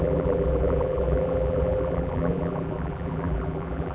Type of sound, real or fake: fake